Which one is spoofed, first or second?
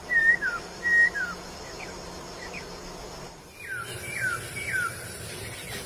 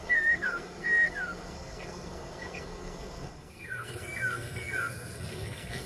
second